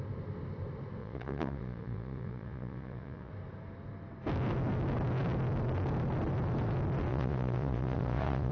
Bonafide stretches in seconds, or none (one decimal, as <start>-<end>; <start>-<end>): 0.0-1.0; 3.3-7.1